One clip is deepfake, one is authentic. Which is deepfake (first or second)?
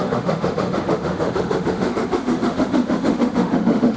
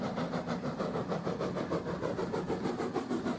first